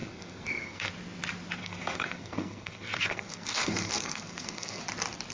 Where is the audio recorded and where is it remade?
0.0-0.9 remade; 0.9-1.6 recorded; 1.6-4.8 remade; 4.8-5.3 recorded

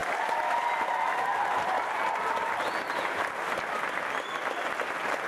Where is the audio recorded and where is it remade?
0.0-5.3 recorded